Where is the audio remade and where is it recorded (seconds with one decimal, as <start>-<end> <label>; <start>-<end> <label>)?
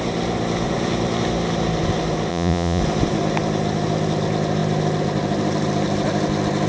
0.0-2.3 recorded; 2.3-2.8 remade; 2.8-6.7 recorded